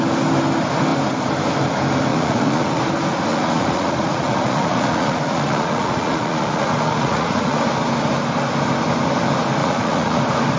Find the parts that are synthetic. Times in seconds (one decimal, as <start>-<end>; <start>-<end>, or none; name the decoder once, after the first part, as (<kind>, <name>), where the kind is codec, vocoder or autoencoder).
2.1-2.8 (vocoder, Vocos); 3.3-7.6; 9.6-10.2